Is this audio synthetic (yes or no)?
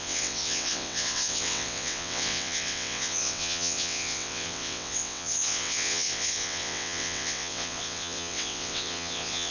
yes